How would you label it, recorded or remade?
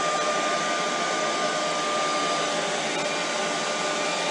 recorded